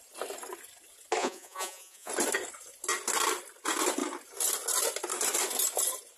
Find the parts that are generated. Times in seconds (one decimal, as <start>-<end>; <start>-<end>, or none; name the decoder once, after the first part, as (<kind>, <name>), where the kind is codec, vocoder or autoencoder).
1.2-2.1 (vocoder, Vocos)